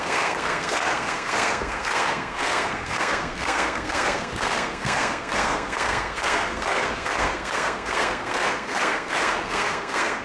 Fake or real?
fake